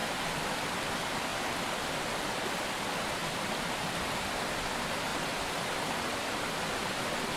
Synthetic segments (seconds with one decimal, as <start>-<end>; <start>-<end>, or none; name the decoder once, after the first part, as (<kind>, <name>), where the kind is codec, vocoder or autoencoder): 0.0-0.8 (vocoder, BigVGAN v2); 3.2-4.0; 5.1-6.0